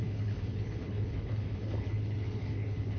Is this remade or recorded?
remade